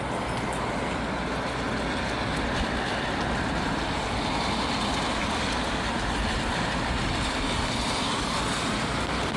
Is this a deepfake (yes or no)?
no